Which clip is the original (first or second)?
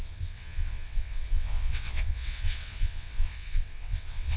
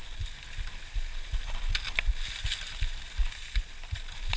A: second